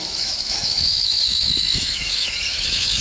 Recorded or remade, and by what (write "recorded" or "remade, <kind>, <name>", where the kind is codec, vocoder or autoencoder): remade, autoencoder, DAC-VAE